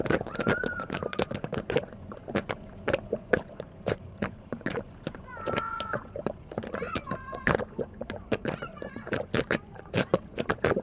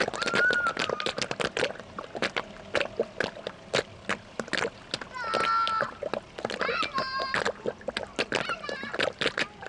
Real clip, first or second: second